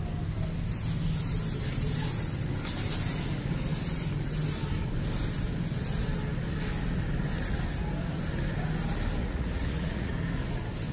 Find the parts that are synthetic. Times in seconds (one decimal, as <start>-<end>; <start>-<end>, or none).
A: 9.2-10.1